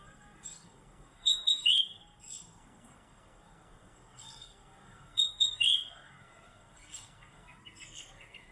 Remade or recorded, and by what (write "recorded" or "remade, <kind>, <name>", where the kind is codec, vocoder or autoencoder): remade, codec, SNAC